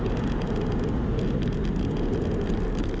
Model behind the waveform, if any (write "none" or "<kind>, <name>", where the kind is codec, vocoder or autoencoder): none